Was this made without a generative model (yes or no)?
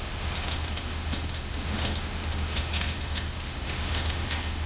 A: no